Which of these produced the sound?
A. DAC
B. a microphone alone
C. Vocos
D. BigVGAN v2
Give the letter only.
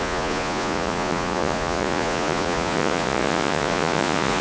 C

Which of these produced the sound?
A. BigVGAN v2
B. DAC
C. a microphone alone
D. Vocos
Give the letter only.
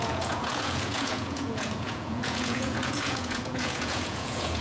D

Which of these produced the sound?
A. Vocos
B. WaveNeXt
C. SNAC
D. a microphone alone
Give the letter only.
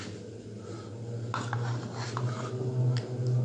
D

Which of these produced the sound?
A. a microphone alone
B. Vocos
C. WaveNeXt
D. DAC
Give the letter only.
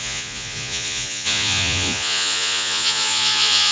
B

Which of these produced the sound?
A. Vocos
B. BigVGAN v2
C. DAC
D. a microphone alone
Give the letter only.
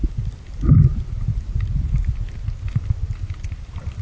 D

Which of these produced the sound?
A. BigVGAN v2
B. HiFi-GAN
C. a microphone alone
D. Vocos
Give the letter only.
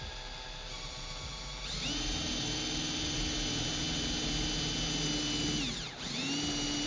C